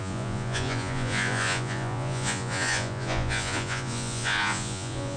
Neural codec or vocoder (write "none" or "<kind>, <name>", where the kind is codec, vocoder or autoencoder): vocoder, Vocos